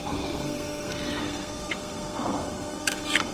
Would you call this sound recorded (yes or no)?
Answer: no